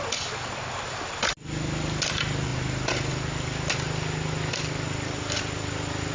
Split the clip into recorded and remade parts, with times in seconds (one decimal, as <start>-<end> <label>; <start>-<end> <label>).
0.0-6.1 recorded